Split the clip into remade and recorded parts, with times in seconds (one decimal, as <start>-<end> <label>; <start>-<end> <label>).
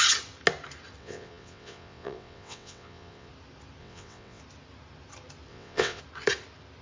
0.0-1.0 recorded; 1.0-3.3 remade; 3.3-3.8 recorded; 3.8-4.4 remade; 4.4-5.5 recorded; 5.5-6.0 remade; 6.0-6.8 recorded